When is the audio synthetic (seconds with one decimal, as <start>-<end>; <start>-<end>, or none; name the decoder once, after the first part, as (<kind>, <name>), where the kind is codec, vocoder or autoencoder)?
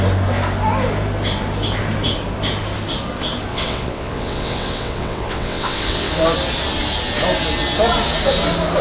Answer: 3.5-6.1 (vocoder, WaveNeXt)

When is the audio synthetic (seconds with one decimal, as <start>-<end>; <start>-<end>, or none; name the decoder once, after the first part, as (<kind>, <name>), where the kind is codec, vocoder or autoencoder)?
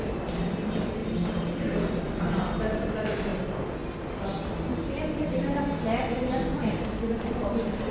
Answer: none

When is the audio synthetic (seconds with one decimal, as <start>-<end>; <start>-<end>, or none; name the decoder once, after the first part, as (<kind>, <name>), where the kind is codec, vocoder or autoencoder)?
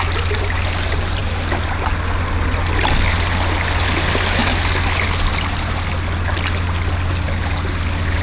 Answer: none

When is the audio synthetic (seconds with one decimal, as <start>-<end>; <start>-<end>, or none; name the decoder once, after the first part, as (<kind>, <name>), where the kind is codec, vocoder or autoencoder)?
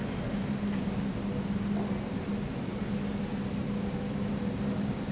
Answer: none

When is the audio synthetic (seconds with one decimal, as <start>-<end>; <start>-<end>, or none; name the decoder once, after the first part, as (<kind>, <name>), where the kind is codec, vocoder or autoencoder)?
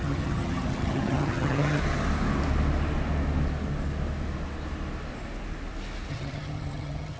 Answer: 0.0-1.8 (vocoder, HiFi-GAN); 6.1-7.2